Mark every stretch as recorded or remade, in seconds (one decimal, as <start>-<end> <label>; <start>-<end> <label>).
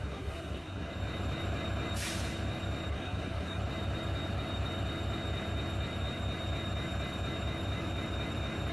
0.0-0.9 remade; 0.9-2.9 recorded; 2.9-3.6 remade; 3.6-8.7 recorded